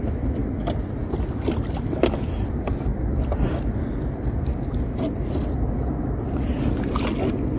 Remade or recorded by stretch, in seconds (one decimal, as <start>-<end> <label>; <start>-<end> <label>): 0.0-0.4 recorded; 0.4-2.7 remade; 2.7-7.6 recorded